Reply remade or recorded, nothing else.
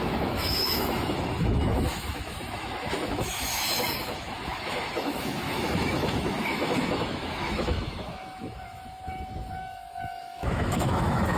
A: remade